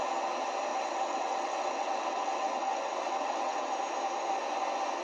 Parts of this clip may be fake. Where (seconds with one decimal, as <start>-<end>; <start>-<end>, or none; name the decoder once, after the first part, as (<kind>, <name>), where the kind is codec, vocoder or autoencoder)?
0.7-3.7 (vocoder, WaveNeXt)